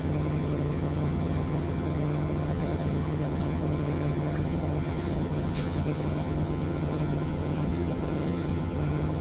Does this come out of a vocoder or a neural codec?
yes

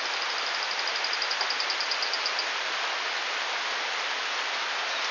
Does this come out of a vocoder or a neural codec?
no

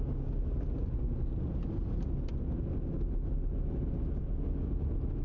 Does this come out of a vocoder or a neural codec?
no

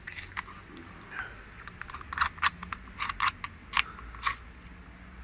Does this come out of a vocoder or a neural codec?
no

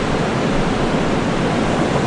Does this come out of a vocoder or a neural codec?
no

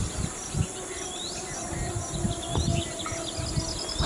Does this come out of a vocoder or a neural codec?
no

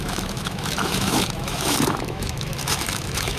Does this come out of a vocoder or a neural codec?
yes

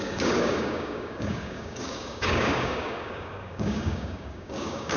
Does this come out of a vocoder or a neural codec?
yes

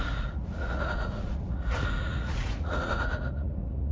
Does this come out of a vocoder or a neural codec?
yes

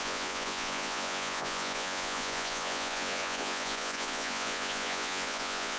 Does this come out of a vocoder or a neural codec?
yes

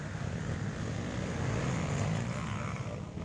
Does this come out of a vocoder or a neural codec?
no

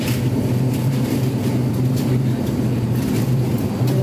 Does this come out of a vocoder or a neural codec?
yes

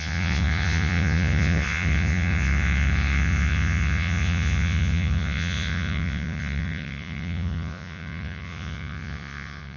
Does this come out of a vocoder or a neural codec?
yes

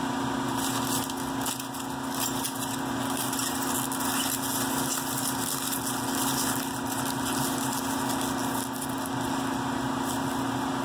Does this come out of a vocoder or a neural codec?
no